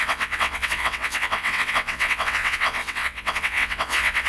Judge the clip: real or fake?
fake